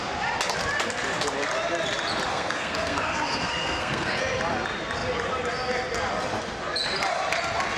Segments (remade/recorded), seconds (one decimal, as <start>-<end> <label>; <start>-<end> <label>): 0.0-2.3 recorded; 2.3-4.2 remade; 4.2-7.8 recorded

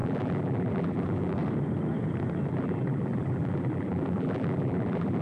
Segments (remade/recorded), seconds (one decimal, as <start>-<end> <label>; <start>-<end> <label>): 0.0-1.4 remade; 1.4-2.5 recorded; 2.5-5.2 remade

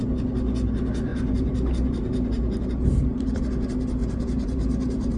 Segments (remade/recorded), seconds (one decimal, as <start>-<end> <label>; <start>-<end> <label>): 0.0-1.1 recorded; 1.1-3.4 remade; 3.4-4.0 recorded; 4.0-5.2 remade

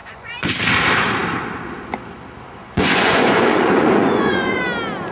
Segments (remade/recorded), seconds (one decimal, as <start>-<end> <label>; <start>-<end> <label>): 0.0-0.5 remade; 0.5-2.6 recorded; 2.6-4.6 remade; 4.6-5.1 recorded